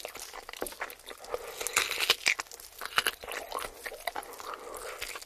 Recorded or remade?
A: recorded